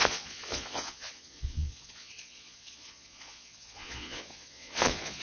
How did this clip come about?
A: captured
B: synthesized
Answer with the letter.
B